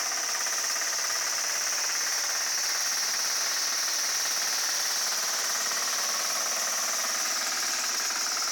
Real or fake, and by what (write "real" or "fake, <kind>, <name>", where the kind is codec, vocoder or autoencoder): fake, vocoder, BigVGAN v2